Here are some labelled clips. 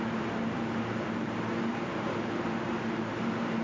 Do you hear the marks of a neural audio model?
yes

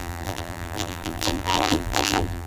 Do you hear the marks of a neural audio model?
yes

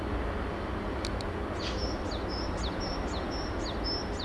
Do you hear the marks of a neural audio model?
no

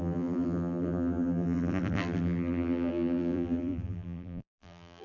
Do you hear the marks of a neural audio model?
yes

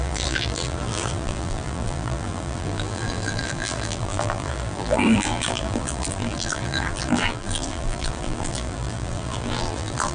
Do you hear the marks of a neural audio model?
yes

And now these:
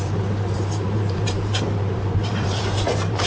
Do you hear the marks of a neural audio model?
yes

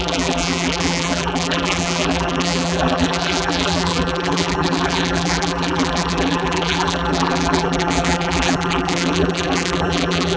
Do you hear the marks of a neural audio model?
yes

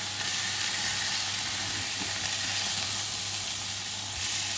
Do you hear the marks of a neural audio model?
no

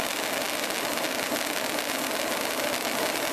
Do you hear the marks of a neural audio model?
no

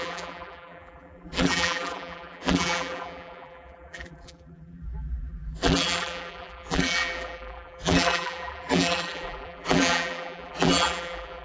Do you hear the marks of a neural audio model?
yes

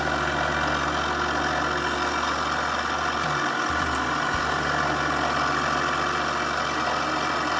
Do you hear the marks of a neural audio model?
no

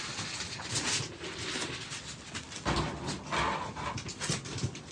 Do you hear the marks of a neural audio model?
no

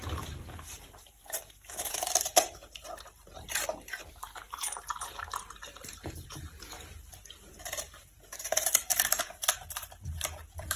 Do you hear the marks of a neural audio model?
yes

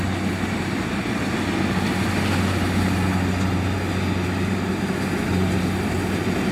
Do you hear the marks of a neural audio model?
no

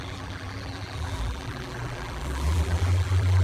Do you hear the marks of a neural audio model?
yes